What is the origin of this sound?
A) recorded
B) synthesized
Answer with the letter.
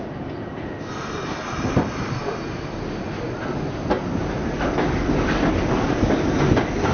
A